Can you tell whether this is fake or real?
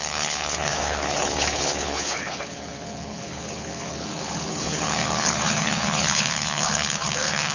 fake